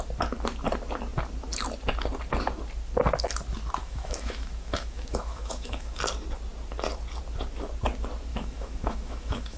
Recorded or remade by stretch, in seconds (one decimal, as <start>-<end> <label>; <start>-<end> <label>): 0.0-3.8 recorded; 3.8-6.0 remade; 6.0-8.3 recorded; 8.3-9.6 remade